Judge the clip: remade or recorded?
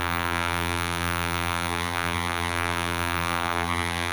remade